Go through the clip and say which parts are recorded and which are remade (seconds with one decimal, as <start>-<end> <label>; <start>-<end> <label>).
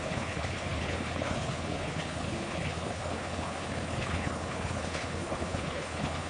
0.0-6.3 remade